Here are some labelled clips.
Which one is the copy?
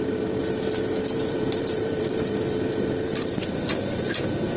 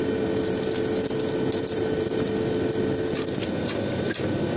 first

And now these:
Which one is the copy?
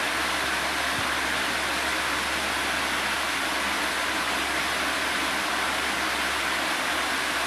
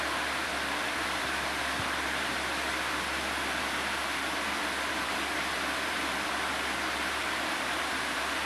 second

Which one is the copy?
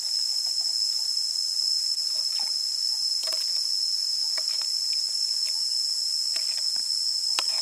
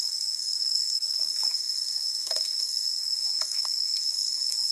second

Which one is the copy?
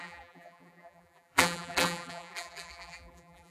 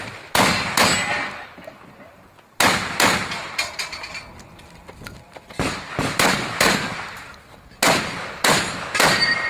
first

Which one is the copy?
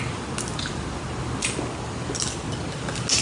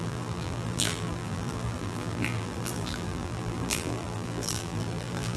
second